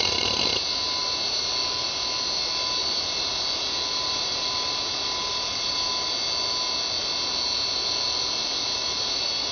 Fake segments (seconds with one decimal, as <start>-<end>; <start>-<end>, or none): 2.8-5.7